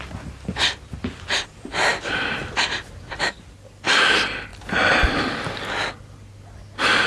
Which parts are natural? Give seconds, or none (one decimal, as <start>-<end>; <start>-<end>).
0.0-7.1